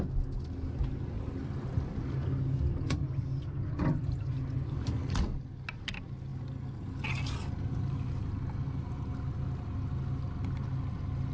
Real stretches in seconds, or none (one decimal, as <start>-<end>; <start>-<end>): 0.0-11.3